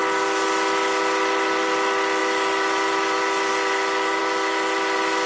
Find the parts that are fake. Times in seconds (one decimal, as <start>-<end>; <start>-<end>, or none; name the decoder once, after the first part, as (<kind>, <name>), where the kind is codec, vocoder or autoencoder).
none